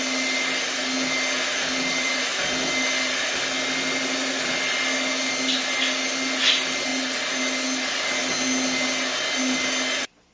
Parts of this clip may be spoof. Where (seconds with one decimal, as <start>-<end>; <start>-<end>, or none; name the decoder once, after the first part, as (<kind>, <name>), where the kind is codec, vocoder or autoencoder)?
none